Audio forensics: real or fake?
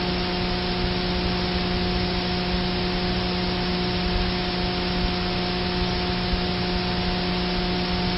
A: real